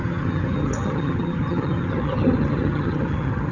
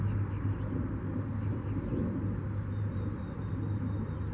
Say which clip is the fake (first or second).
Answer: first